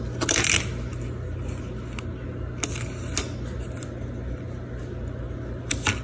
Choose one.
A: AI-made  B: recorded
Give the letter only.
B